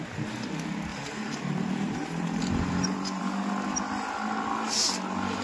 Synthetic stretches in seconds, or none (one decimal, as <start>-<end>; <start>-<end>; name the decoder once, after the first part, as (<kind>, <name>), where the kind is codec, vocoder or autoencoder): 0.9-3.2 (vocoder, BigVGAN v2)